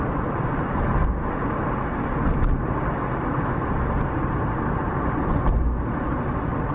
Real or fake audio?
real